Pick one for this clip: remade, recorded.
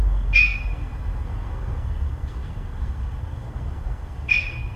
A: remade